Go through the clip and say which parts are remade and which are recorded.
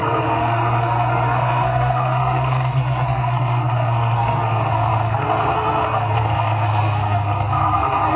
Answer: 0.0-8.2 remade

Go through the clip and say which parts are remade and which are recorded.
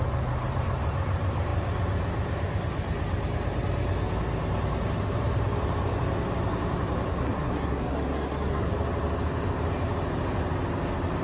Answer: 0.0-7.1 recorded; 7.1-8.7 remade; 8.7-11.2 recorded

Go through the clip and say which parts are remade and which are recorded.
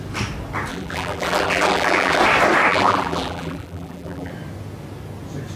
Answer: 0.0-0.7 recorded; 0.7-2.2 remade; 2.2-2.7 recorded; 2.7-4.3 remade; 4.3-5.6 recorded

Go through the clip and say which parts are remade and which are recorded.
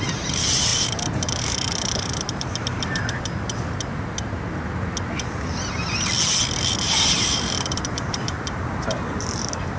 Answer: 0.0-3.0 remade; 3.0-6.8 recorded; 6.8-9.8 remade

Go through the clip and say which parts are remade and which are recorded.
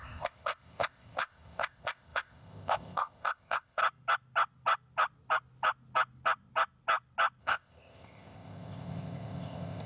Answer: 0.0-3.8 remade; 3.8-7.4 recorded; 7.4-9.9 remade